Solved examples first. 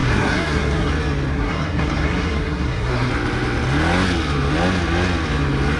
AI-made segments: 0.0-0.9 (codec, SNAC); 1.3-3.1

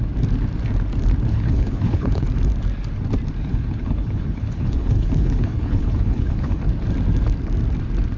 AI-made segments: 1.3-2.2 (codec, HILCodec); 3.5-6.6

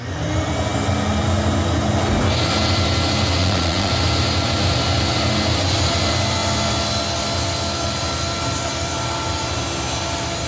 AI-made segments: 3.4-3.9 (vocoder, Vocos)